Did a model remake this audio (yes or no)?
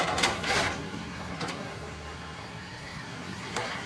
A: yes